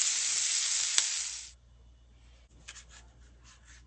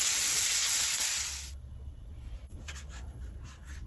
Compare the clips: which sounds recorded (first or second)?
first